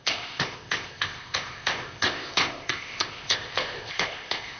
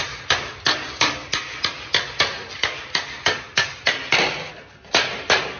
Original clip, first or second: second